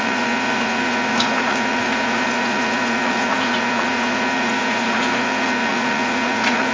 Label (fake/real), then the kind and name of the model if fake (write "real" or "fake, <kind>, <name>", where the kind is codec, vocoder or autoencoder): fake, vocoder, Vocos